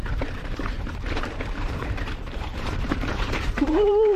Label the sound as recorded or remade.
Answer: remade